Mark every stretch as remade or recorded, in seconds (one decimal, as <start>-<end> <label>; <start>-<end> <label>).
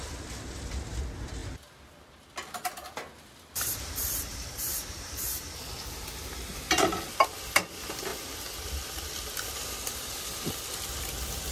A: 0.0-1.4 recorded; 1.4-5.7 remade; 5.7-11.5 recorded